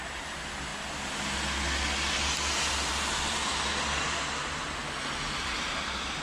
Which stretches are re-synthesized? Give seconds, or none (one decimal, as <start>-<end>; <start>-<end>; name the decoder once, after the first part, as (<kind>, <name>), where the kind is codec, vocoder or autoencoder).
0.0-0.7 (vocoder, BigVGAN v2); 2.7-3.4; 4.0-4.8; 5.4-6.2